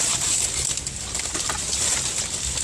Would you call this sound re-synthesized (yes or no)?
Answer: no